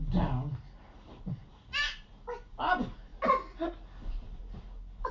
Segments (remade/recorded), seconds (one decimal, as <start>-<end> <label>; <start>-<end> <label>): 0.0-5.1 recorded